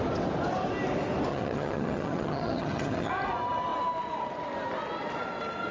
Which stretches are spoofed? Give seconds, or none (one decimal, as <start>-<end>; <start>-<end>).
1.3-3.1